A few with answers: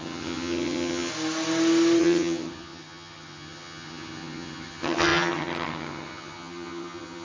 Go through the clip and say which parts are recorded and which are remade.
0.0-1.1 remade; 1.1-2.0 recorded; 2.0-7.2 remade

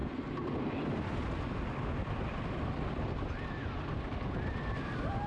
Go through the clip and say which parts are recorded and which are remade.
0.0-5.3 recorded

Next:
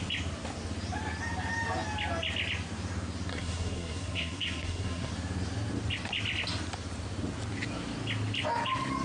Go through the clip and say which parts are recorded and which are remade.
0.0-3.3 recorded; 3.3-5.1 remade; 5.1-9.0 recorded

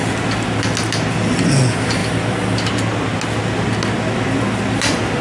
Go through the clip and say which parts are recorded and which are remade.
0.0-5.2 recorded

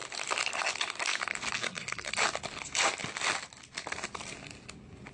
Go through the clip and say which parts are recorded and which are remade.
0.0-1.6 recorded; 1.6-2.1 remade; 2.1-5.1 recorded

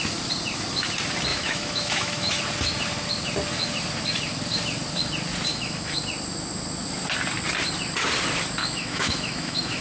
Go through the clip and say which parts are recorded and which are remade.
0.0-1.3 recorded; 1.3-2.4 remade; 2.4-5.5 recorded; 5.5-6.0 remade; 6.0-8.6 recorded; 8.6-9.8 remade